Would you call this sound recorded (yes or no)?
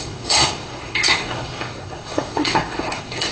no